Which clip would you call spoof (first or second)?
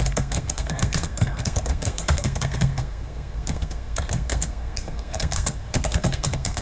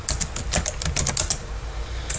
first